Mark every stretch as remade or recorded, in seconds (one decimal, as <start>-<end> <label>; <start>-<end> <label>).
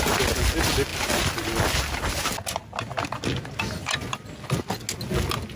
0.0-5.6 recorded